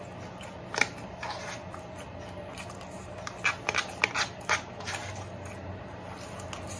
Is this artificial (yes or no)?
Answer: no